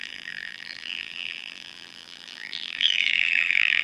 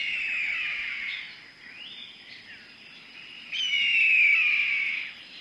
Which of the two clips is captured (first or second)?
second